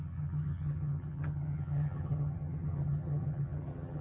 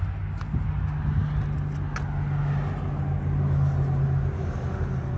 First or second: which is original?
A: second